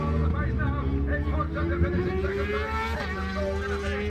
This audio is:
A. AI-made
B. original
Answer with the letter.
B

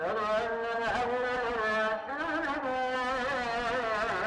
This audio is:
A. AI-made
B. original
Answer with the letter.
B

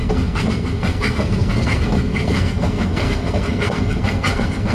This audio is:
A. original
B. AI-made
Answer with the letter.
B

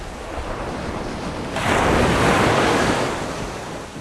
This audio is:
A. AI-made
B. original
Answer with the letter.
B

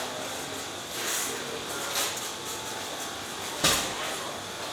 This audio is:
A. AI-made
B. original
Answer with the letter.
B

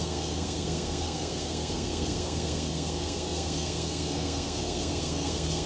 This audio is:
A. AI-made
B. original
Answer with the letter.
A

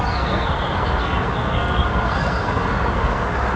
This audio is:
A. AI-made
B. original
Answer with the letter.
A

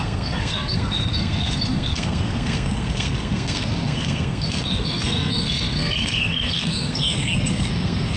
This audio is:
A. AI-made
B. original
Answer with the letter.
A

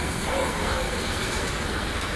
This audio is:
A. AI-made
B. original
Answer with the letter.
A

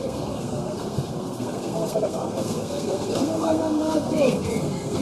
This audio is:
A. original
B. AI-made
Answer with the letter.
B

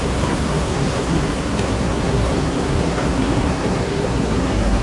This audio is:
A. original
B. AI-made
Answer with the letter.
B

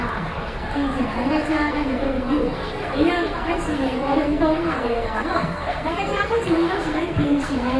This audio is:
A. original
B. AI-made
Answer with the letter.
B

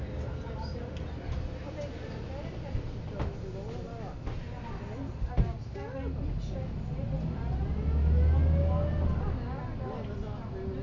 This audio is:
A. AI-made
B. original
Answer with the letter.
B